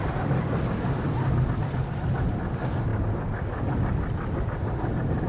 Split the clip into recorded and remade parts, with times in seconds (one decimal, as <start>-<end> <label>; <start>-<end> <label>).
0.0-5.3 recorded